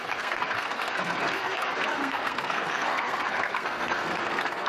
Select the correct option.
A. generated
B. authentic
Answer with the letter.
A